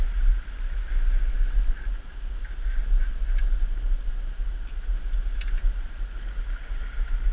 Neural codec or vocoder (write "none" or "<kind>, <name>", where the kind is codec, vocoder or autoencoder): none